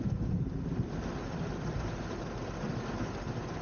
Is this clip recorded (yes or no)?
yes